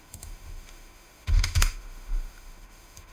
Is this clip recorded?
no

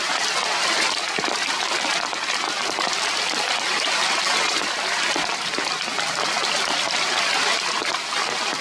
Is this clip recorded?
yes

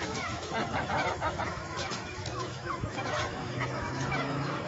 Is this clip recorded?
no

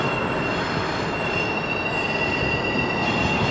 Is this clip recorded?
yes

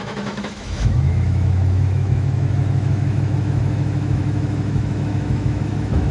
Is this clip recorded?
no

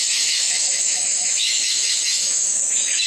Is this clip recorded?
no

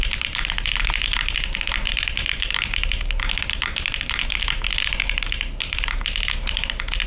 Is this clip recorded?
yes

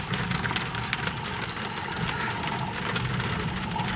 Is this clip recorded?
yes